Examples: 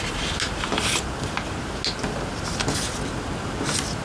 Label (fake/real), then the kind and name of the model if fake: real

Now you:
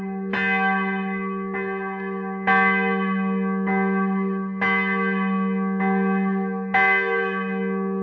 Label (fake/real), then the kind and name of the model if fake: real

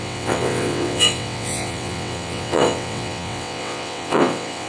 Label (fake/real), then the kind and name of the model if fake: fake, vocoder, WaveNeXt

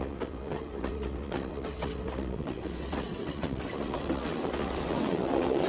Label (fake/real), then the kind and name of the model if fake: fake, vocoder, WaveNeXt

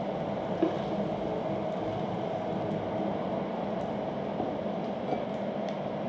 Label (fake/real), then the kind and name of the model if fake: real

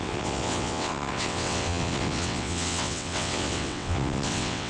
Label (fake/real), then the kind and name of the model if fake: fake, vocoder, WaveNeXt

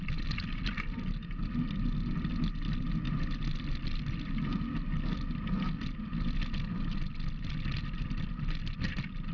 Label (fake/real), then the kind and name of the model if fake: real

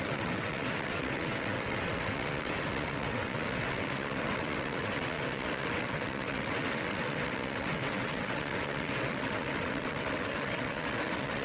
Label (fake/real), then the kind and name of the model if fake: fake, vocoder, WaveNeXt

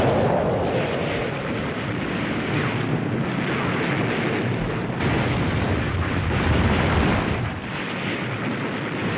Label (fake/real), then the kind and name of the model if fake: real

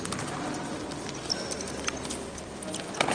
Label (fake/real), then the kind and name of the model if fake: real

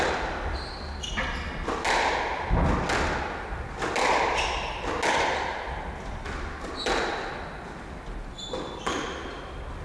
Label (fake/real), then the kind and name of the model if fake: real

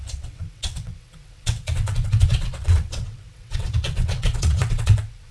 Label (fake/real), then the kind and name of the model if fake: fake, vocoder, WaveNeXt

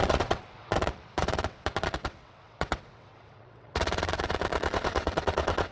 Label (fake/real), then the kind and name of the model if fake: fake, vocoder, WaveNeXt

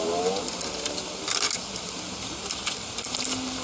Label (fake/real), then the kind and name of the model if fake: real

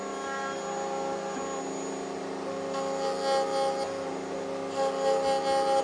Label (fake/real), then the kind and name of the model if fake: real